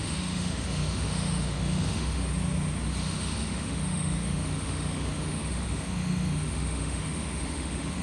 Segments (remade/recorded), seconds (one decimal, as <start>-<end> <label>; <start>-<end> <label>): 0.0-2.2 remade; 2.2-3.0 recorded; 3.0-8.0 remade